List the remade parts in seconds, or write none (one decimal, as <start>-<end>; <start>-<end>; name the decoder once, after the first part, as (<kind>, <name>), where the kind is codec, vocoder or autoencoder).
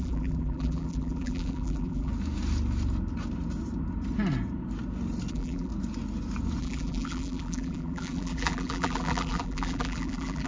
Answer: 0.0-2.1 (vocoder, BigVGAN v2); 5.3-5.7; 6.6-10.5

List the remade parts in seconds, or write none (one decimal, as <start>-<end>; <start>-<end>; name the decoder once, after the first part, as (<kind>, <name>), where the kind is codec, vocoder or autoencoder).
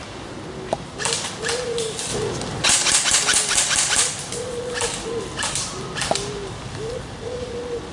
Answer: none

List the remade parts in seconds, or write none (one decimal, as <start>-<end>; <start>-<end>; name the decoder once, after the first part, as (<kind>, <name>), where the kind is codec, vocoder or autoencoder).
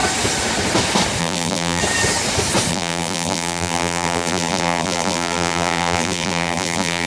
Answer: 1.2-1.8 (vocoder, BigVGAN v2); 2.7-7.1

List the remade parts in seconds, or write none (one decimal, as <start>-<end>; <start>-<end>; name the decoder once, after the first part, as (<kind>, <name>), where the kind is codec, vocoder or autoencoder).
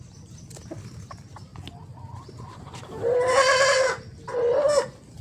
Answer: none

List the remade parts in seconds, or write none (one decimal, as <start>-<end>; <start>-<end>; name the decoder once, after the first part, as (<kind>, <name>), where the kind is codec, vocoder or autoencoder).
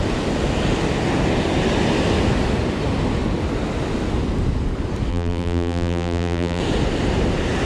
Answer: 5.1-6.6 (vocoder, BigVGAN v2)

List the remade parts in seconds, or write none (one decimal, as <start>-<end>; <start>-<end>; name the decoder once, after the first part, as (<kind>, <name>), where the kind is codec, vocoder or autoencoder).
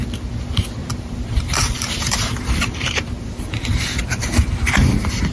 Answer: 0.8-4.0 (vocoder, BigVGAN v2)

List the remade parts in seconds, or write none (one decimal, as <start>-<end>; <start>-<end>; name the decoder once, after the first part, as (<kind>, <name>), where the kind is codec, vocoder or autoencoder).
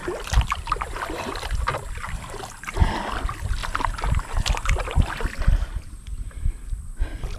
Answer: none